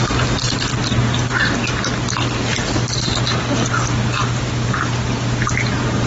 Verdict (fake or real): real